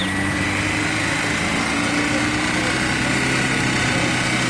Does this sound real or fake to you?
real